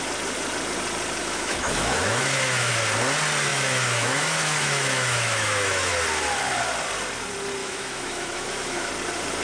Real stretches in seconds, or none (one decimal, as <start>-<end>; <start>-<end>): 0.0-1.2; 2.7-3.5; 5.9-7.6; 8.9-9.4